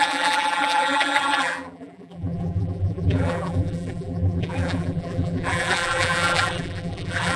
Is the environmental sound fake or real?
fake